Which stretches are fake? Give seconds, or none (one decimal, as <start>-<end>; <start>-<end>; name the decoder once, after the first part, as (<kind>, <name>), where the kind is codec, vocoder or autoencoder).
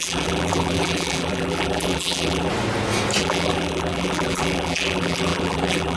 0.0-2.5 (vocoder, BigVGAN v2); 3.2-6.0